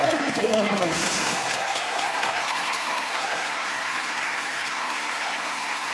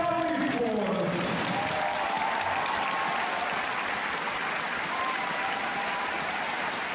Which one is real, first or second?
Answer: second